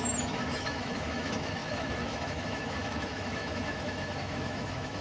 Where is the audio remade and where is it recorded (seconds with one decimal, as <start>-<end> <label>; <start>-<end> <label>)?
0.0-5.0 remade